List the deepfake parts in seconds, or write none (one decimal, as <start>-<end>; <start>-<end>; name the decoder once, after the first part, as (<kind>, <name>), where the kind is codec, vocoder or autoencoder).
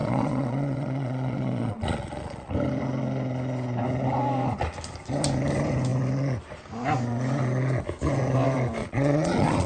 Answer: 0.0-2.5 (vocoder, Vocos); 8.8-9.7